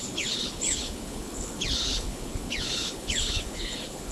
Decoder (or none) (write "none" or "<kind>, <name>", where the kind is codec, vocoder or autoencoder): codec, HILCodec